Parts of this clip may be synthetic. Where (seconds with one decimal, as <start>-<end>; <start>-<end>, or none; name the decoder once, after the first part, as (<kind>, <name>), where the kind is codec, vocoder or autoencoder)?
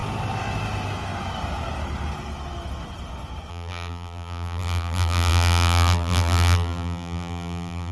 3.5-7.9 (vocoder, BigVGAN v2)